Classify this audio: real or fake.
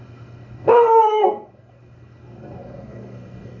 fake